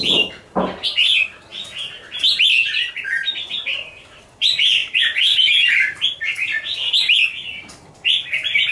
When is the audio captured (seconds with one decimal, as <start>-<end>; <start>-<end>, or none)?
1.5-3.5